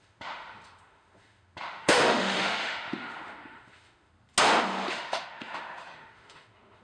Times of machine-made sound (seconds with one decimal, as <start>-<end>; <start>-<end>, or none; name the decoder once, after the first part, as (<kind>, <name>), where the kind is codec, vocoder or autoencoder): 0.0-4.1 (autoencoder, DAC-VAE); 4.9-6.8